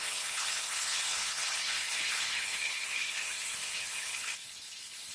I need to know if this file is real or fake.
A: fake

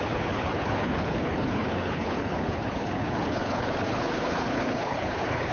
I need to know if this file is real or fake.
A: fake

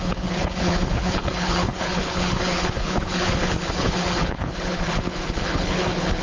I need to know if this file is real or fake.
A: fake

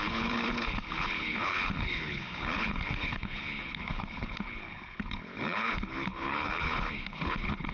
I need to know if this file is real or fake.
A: fake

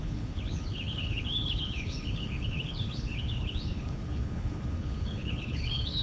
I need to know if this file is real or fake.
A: fake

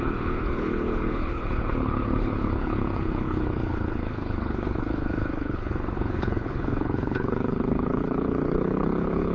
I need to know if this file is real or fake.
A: fake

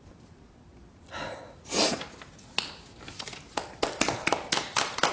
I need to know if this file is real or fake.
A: real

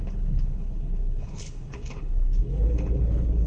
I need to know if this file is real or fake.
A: fake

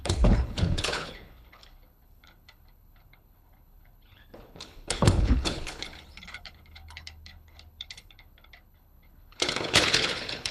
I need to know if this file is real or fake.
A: fake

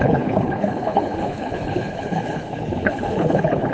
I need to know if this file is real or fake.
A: fake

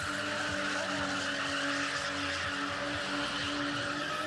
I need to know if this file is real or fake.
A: real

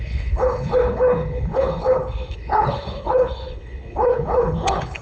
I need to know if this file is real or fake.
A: fake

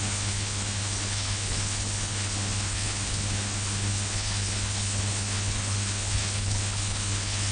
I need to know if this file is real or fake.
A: fake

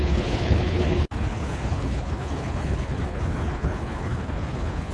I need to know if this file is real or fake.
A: fake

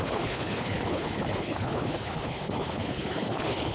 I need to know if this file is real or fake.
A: fake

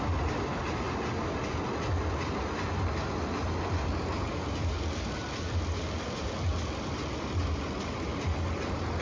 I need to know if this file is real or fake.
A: real